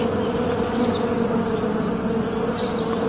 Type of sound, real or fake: real